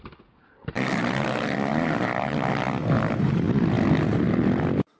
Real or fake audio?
real